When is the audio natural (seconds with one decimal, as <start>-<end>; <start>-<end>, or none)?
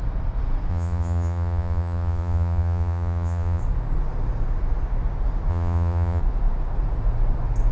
0.0-0.7; 3.6-5.5; 6.2-7.7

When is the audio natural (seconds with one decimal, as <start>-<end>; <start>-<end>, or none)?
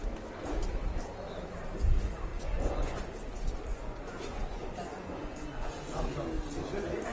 0.0-2.3; 3.1-3.7; 5.7-7.1